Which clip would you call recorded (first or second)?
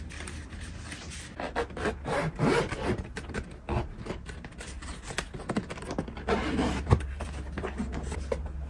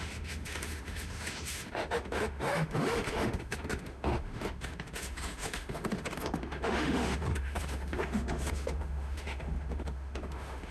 first